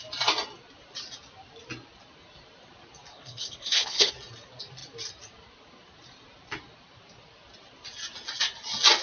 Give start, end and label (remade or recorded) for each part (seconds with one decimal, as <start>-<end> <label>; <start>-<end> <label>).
0.0-3.1 recorded; 3.1-4.1 remade; 4.1-9.0 recorded